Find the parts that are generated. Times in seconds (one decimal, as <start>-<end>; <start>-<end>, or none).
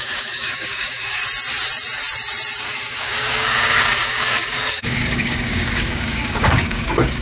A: 0.0-1.2; 2.6-7.2